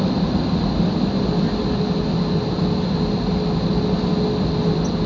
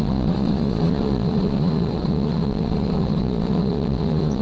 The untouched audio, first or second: first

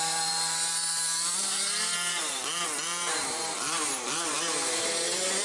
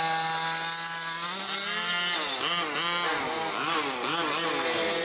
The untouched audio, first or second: second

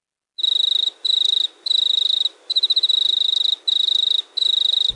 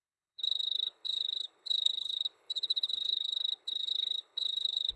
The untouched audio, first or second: first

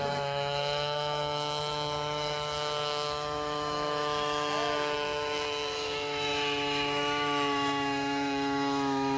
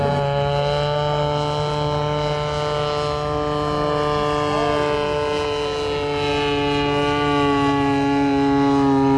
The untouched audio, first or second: second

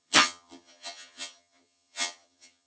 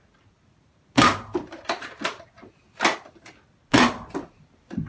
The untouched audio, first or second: second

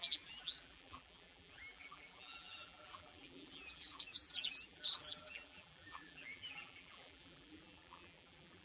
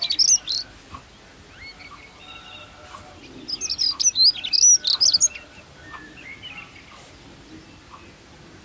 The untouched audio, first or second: second